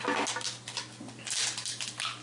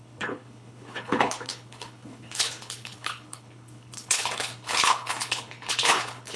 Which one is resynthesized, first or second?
second